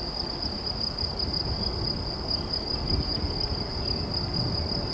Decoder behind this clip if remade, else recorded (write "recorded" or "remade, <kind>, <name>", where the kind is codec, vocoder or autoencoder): recorded